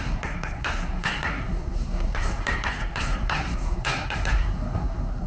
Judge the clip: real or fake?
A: fake